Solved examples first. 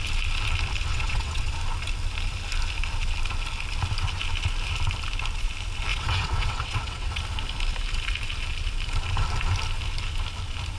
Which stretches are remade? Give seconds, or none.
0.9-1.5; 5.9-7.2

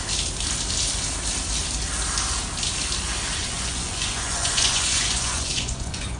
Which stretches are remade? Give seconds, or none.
3.4-6.2

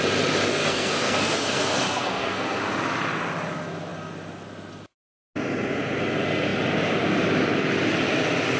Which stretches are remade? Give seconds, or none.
0.5-2.6

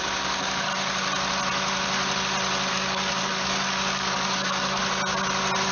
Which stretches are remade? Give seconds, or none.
0.0-0.7; 2.7-4.8

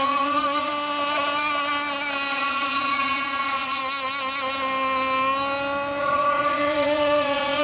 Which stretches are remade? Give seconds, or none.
0.0-0.7; 2.3-3.8; 6.0-7.6